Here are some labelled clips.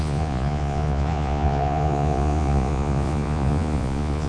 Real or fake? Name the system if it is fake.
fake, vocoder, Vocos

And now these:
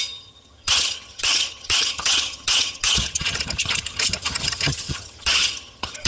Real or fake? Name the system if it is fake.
fake, vocoder, HiFi-GAN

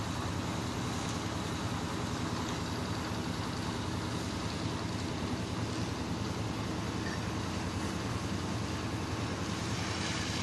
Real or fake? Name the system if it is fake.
real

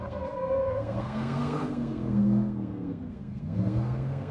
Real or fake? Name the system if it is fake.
fake, codec, SNAC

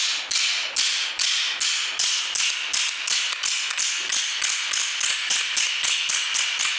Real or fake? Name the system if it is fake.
real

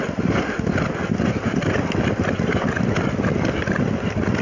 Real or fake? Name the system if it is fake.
real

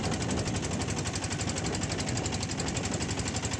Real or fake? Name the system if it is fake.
real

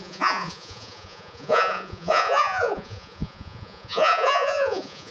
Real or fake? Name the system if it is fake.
fake, vocoder, Vocos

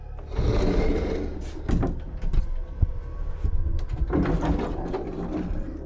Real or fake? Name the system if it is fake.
real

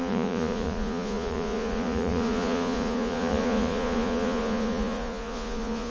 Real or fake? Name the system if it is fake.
fake, vocoder, Vocos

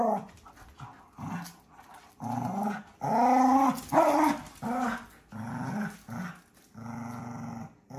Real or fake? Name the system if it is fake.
real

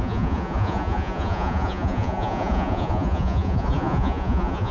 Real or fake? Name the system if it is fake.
fake, vocoder, Vocos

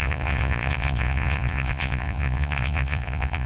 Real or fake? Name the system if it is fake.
fake, vocoder, Vocos